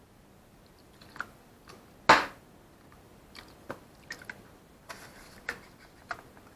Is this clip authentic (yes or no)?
yes